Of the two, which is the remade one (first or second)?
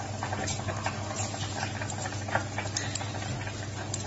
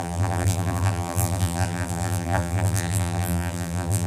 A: second